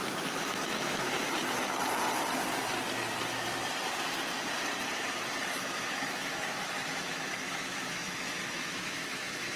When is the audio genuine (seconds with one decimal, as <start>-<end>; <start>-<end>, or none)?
1.3-5.4